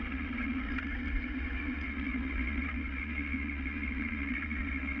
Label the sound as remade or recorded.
remade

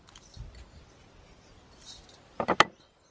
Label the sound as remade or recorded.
recorded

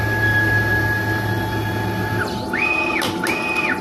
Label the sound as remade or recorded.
recorded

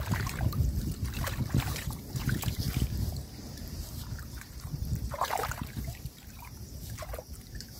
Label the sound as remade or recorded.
remade